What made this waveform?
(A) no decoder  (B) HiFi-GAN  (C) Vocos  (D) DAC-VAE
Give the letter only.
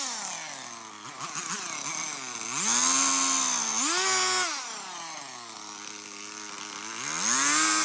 A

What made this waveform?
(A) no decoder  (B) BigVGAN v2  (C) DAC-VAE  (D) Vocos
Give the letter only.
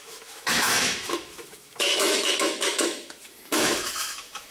C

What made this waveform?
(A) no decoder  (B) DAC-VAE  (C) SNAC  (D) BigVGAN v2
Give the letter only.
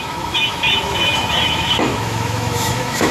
B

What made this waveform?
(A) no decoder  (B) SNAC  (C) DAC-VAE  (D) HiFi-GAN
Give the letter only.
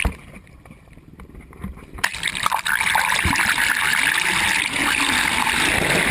A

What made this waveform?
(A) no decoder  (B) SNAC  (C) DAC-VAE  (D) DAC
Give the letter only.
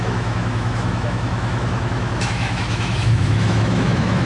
C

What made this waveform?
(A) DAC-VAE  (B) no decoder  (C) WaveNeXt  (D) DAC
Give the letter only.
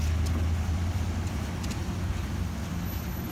B